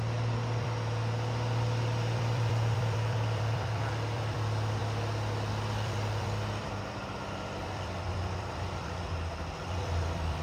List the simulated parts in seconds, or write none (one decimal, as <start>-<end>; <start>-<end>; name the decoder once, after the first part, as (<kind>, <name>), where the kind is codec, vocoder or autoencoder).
0.0-4.8 (vocoder, BigVGAN v2); 5.5-10.4